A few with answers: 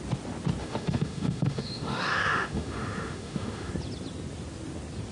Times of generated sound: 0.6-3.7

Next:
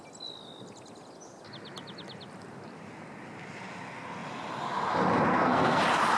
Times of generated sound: 5.3-5.8